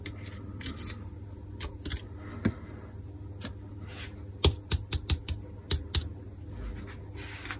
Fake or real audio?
real